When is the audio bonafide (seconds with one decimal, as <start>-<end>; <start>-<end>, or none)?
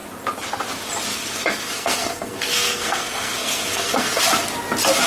0.0-1.1; 4.2-5.1